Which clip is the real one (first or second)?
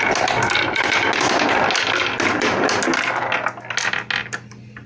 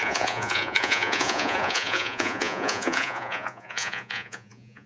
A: first